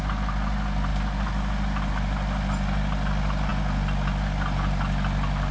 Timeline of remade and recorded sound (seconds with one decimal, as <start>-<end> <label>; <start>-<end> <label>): 0.0-5.5 recorded